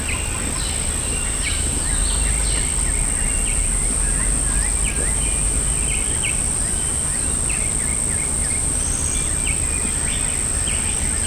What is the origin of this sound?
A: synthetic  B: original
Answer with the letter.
B